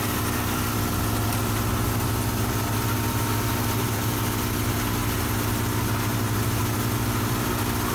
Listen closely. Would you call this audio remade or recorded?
recorded